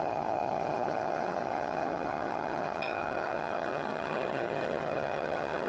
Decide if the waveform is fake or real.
fake